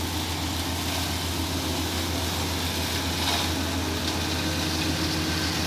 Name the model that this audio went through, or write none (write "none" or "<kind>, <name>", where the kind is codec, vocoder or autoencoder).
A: none